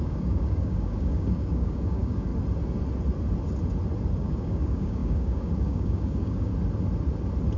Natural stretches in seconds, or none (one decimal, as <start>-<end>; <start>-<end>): 2.3-4.2; 6.5-7.6